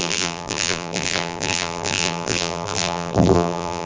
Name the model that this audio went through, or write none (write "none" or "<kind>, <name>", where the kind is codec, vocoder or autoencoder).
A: vocoder, BigVGAN v2